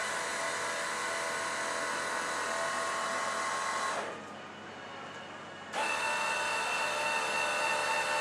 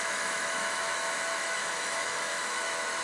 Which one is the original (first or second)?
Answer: first